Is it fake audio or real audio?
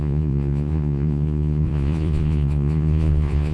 fake